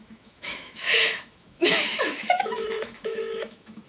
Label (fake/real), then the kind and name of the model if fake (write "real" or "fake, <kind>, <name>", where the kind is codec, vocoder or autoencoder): fake, autoencoder, DAC-VAE